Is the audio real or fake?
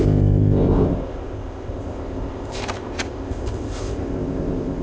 fake